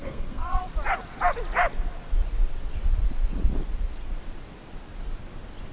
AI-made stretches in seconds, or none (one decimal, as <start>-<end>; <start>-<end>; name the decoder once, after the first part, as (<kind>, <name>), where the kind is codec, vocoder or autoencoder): 0.0-0.6 (codec, SNAC)